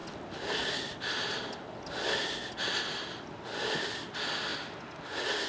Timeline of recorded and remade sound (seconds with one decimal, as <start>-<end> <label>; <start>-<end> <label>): 0.0-5.5 recorded